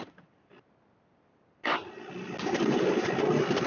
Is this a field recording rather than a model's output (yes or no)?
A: yes